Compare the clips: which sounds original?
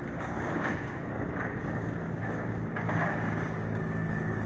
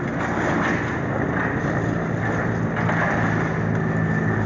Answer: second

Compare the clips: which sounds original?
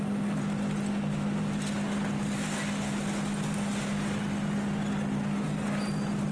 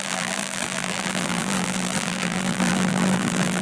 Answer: first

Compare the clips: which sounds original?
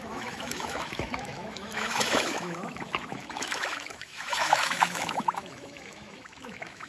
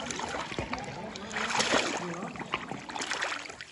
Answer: second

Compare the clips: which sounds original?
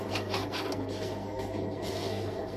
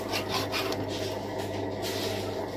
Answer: second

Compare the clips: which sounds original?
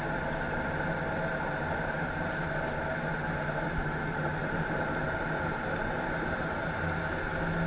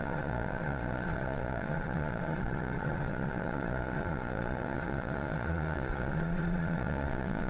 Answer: first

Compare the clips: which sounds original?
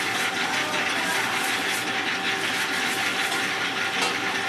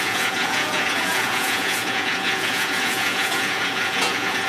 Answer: first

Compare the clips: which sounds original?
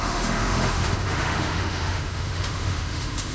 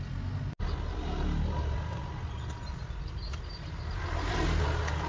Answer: second